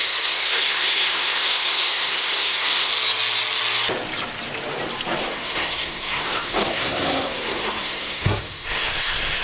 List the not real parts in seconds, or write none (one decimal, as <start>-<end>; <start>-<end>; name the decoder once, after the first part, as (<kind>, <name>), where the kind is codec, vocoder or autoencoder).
0.0-2.9 (codec, SNAC); 5.2-9.4